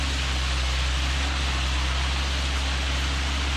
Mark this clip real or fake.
real